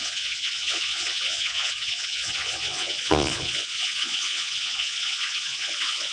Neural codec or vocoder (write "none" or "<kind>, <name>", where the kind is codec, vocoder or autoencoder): vocoder, Vocos